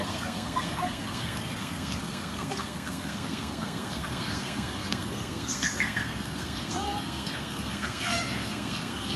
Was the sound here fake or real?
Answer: fake